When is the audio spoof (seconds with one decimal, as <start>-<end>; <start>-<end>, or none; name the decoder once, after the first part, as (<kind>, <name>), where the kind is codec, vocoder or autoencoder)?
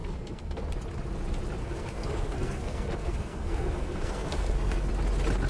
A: 0.0-0.6 (codec, SNAC); 1.6-4.9